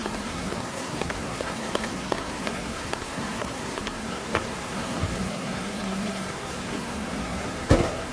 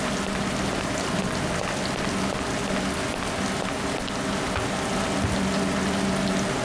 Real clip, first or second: second